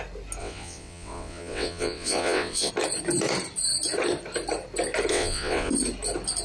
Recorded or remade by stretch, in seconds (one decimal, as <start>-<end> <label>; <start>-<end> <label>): 0.0-0.4 recorded; 0.4-2.7 remade; 2.7-5.1 recorded; 5.1-5.7 remade; 5.7-6.4 recorded